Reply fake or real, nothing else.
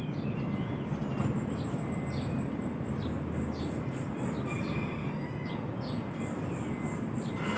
real